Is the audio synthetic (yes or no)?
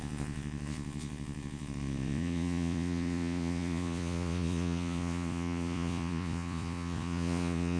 yes